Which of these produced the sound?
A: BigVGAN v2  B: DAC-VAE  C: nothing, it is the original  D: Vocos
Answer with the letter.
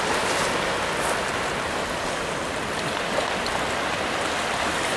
C